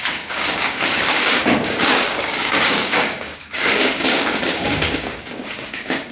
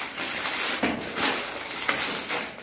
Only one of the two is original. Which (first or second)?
second